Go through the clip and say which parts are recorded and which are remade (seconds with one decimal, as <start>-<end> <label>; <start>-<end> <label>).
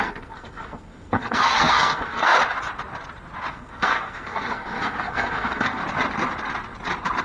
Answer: 0.0-2.3 remade; 2.3-3.5 recorded; 3.5-5.8 remade; 5.8-7.2 recorded